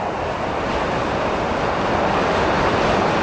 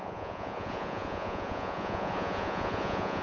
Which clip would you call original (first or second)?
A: first